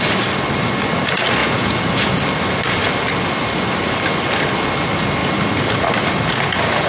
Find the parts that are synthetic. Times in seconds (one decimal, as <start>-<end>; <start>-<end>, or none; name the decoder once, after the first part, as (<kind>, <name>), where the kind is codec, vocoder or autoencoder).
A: 1.4-2.2 (vocoder, Vocos)